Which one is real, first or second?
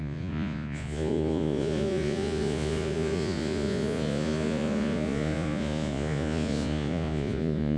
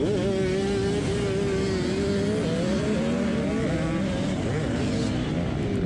second